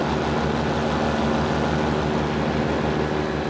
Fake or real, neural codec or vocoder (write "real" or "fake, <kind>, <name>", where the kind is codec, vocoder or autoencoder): real